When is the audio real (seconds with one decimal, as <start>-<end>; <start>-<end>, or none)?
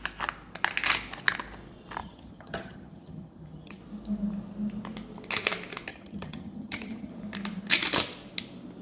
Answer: 0.0-2.0; 3.8-5.9; 7.1-8.8